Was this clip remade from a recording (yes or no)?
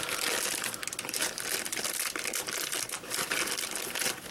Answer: no